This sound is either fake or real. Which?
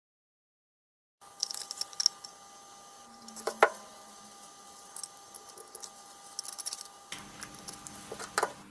real